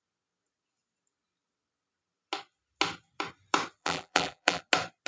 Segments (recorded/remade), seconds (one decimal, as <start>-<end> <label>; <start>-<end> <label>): 0.0-3.8 recorded; 3.8-4.6 remade; 4.6-5.1 recorded